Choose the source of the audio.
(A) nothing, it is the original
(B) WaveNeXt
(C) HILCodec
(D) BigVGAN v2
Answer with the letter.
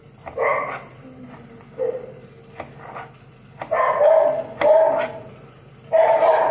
A